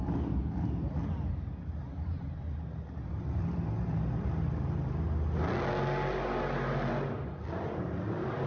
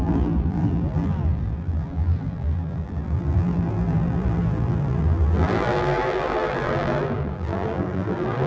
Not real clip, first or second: second